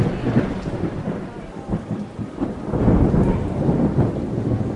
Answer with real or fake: fake